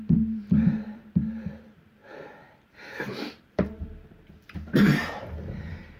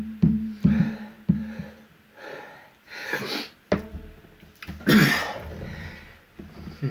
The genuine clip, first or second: second